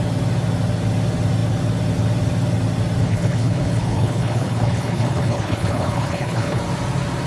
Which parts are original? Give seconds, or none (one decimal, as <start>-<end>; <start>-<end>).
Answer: 0.0-3.0; 6.6-7.3